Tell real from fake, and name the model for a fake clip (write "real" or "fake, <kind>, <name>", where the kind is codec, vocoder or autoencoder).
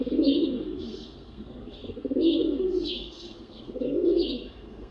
fake, codec, SNAC